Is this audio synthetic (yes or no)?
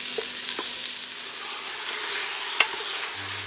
no